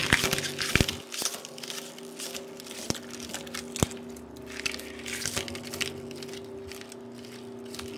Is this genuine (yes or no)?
yes